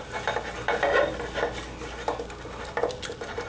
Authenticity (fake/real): real